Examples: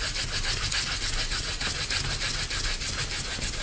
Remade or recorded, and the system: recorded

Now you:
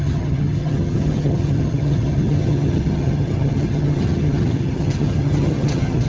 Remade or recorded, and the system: remade, vocoder, HiFi-GAN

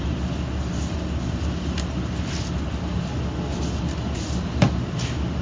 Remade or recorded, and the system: recorded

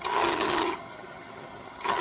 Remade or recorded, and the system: remade, vocoder, HiFi-GAN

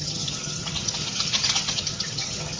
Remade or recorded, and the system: remade, vocoder, HiFi-GAN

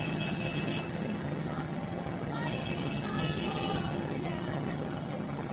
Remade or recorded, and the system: remade, vocoder, HiFi-GAN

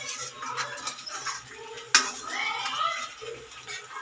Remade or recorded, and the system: recorded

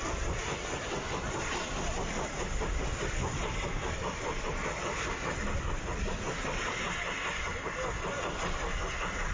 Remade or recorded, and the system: recorded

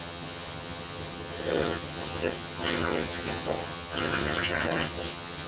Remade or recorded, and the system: remade, vocoder, HiFi-GAN